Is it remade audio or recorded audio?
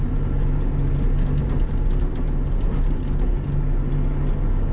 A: recorded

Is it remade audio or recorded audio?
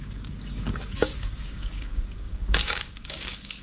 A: remade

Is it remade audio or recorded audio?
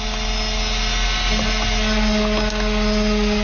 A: recorded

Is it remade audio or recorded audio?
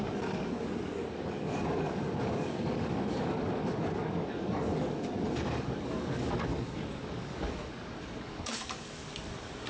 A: remade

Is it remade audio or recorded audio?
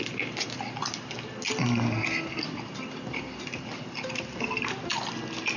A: recorded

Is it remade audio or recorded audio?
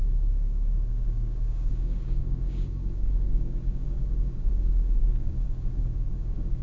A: remade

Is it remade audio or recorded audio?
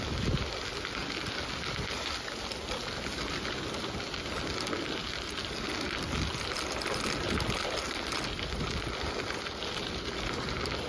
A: recorded